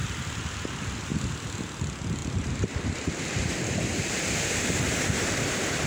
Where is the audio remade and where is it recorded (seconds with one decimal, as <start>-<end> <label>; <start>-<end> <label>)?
0.0-0.6 remade; 0.6-2.2 recorded; 2.2-5.9 remade